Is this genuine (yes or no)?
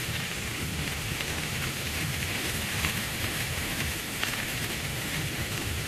no